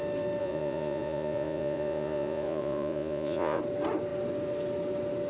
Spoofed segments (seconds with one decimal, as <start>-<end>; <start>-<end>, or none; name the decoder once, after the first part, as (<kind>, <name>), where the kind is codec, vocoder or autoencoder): 0.4-3.6 (vocoder, Vocos)